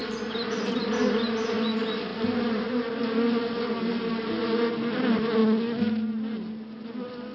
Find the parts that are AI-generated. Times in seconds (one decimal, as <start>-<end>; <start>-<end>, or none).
none